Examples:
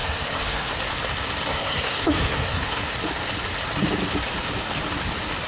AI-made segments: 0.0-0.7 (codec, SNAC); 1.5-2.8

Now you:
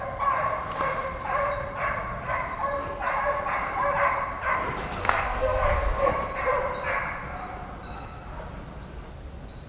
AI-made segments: 5.0-6.1 (codec, SNAC)

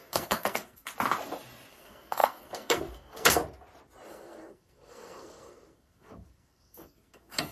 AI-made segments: 0.0-0.9 (codec, SNAC); 1.7-3.4; 4.1-7.5

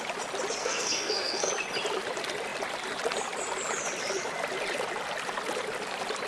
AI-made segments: 0.6-1.5 (codec, SNAC)

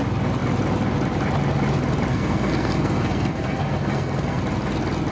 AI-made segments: 2.1-4.4 (codec, SNAC)

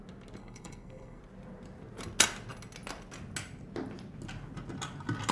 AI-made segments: 0.4-1.2 (codec, SNAC)

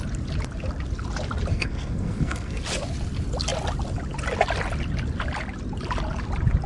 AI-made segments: 1.5-2.6 (codec, SNAC)